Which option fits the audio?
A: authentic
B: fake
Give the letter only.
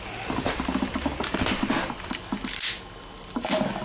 A